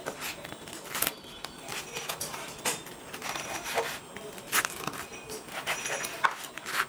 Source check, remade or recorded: recorded